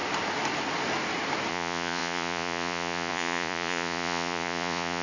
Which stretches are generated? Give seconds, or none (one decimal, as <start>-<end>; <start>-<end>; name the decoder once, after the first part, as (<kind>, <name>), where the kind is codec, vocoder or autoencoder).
1.5-5.0 (vocoder, Vocos)